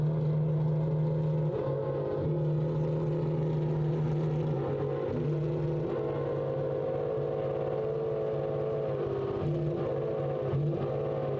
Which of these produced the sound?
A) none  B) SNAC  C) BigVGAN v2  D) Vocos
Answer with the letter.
A